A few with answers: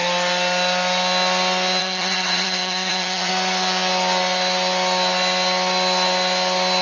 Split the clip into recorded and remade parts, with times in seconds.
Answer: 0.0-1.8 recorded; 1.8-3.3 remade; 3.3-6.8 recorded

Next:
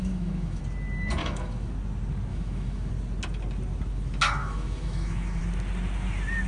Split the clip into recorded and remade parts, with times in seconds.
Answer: 0.0-0.6 remade; 0.6-1.2 recorded; 1.2-1.7 remade; 1.7-2.3 recorded; 2.3-2.9 remade; 2.9-4.4 recorded; 4.4-5.4 remade; 5.4-6.5 recorded

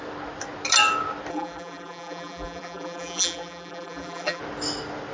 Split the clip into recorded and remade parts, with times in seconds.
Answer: 0.0-1.3 recorded; 1.3-4.4 remade; 4.4-5.1 recorded

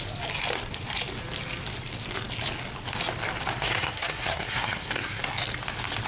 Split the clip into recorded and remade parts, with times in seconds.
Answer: 0.0-3.6 recorded; 3.6-5.2 remade; 5.2-6.1 recorded

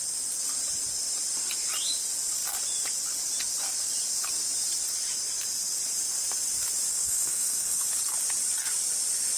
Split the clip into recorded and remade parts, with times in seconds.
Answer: 0.0-6.9 recorded; 6.9-7.8 remade; 7.8-9.4 recorded